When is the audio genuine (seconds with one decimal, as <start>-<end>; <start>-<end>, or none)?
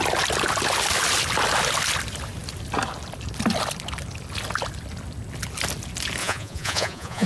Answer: 0.0-6.2